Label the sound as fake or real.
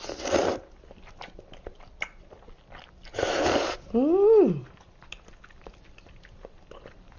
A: real